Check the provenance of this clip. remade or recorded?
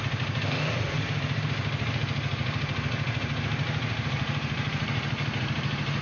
remade